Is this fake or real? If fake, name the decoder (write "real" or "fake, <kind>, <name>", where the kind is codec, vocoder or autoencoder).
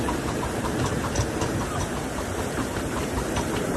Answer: fake, vocoder, BigVGAN v2